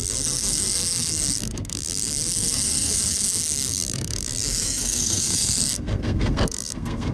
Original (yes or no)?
no